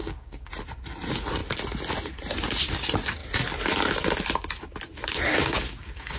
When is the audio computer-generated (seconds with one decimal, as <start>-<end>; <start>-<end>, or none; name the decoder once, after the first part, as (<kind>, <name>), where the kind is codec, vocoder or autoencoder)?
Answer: 0.0-0.5 (codec, DAC); 5.3-6.2